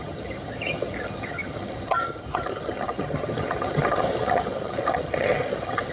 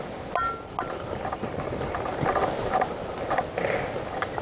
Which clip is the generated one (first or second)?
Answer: first